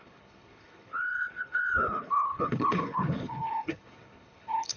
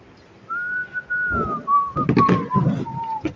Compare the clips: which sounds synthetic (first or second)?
first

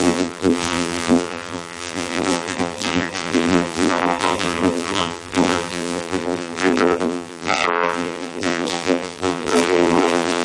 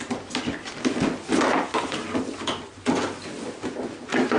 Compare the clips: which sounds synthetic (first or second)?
first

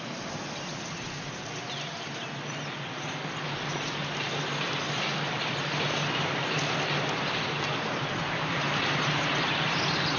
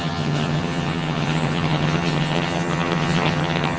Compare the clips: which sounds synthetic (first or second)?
second